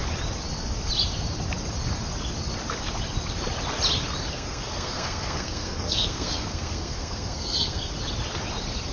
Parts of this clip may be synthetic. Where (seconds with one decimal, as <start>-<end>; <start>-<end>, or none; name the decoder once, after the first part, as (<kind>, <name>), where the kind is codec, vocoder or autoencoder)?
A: 4.3-7.9 (codec, SNAC)